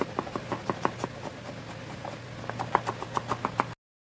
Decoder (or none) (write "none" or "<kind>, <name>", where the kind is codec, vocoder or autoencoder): none